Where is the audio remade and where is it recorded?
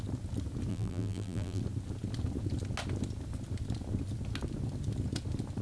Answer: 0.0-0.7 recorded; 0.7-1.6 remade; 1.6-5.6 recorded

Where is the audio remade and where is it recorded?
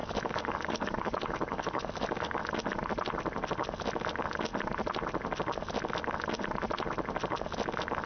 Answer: 0.0-2.4 remade; 2.4-8.1 recorded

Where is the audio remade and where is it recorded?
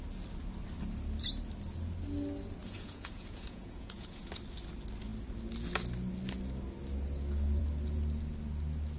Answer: 0.0-2.6 recorded; 2.6-4.3 remade; 4.3-9.0 recorded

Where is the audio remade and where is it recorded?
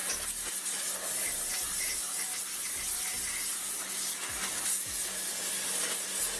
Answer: 0.0-6.4 recorded